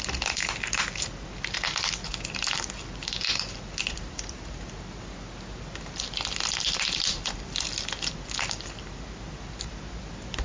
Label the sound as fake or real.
real